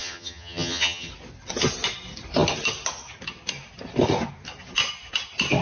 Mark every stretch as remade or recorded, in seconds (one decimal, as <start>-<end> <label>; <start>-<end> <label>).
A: 0.0-1.1 remade; 1.1-5.6 recorded